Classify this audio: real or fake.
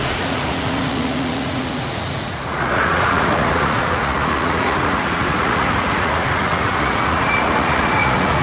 fake